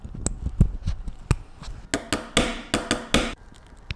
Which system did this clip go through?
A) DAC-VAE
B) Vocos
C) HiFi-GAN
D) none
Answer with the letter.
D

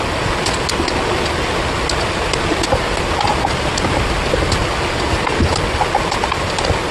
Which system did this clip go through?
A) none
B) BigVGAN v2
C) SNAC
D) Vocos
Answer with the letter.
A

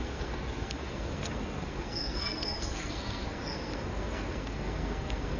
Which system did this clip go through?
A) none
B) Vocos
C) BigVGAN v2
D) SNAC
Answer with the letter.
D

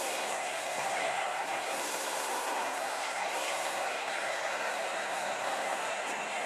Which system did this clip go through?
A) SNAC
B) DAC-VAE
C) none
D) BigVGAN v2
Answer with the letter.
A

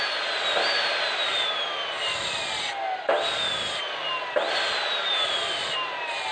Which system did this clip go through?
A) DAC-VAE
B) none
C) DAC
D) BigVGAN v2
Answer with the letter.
B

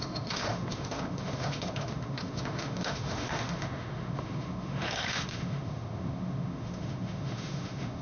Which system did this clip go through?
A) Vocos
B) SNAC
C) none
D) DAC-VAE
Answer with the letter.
D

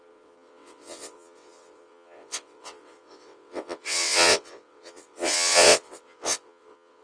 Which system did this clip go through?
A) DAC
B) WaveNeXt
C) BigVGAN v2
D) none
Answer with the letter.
B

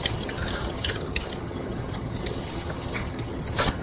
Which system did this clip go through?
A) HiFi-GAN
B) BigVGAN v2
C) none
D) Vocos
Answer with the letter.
A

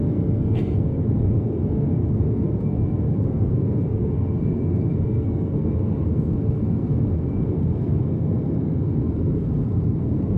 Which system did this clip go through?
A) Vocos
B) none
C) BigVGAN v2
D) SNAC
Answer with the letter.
D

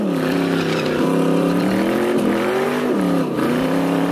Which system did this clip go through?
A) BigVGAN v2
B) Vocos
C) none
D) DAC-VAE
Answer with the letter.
A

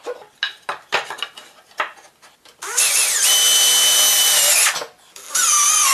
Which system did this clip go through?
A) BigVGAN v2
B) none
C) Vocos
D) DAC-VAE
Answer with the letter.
B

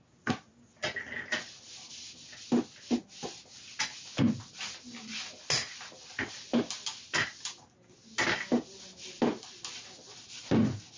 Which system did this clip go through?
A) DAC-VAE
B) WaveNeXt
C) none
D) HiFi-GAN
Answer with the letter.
C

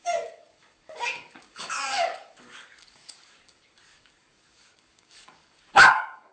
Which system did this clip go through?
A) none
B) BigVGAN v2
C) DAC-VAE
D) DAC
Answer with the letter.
D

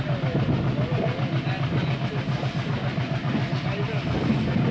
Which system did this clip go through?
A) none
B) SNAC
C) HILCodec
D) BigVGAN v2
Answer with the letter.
A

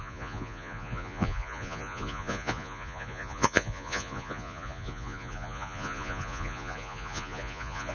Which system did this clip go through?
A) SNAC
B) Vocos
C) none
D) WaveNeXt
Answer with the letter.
B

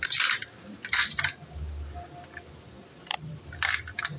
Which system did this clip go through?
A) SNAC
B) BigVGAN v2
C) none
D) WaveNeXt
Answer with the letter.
C